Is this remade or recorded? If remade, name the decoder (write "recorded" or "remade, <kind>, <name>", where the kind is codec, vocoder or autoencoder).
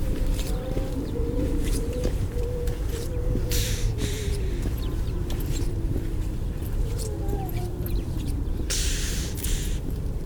remade, vocoder, BigVGAN v2